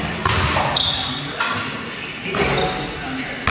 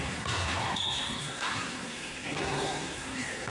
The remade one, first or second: second